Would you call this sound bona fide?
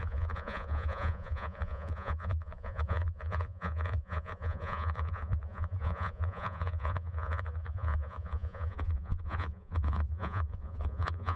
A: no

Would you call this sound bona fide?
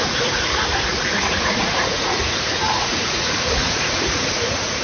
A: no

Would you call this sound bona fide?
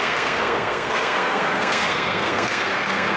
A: no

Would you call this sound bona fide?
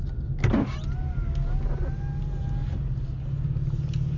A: yes